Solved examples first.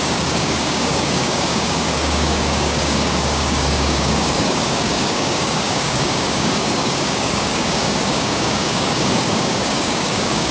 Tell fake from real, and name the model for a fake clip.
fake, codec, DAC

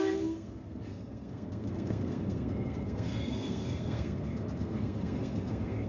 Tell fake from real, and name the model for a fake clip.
fake, codec, SNAC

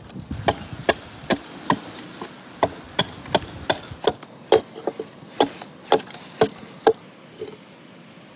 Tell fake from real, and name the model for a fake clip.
real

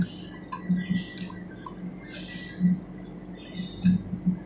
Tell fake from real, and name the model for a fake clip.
real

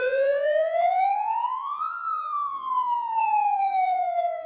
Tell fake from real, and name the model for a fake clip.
fake, vocoder, Vocos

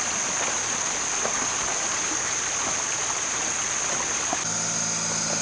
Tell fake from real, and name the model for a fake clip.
real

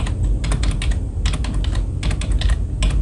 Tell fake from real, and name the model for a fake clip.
real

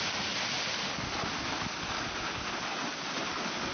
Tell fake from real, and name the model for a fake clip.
real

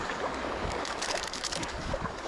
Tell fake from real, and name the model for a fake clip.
fake, codec, DAC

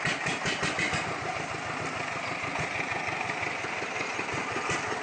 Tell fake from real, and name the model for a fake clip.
real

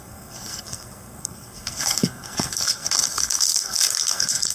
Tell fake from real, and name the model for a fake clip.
fake, codec, SNAC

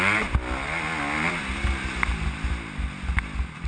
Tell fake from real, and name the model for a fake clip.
real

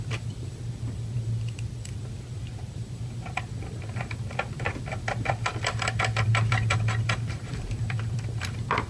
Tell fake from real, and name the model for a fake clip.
fake, vocoder, BigVGAN v2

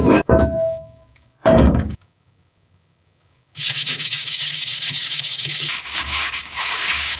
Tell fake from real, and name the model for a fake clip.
fake, codec, DAC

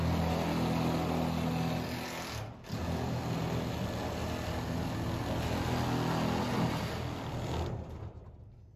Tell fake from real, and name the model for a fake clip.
real